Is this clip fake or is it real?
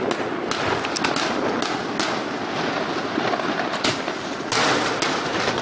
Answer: real